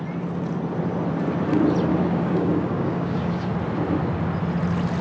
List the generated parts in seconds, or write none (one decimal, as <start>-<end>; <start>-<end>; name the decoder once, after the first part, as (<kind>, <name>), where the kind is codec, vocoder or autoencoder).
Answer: 1.9-3.5 (codec, DAC)